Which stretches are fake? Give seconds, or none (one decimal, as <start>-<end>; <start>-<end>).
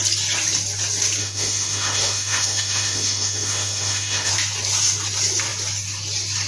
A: 1.2-4.3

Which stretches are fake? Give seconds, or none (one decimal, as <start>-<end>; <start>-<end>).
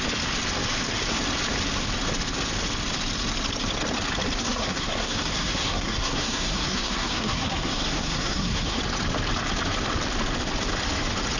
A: 4.4-8.8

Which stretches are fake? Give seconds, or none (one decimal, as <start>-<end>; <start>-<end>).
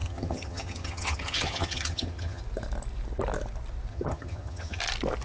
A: 0.0-2.4; 3.9-4.8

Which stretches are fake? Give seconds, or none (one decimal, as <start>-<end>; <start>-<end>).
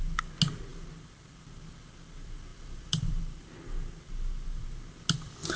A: 2.5-3.2